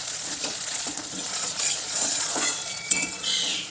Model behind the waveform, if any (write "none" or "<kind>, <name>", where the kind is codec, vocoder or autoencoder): vocoder, Vocos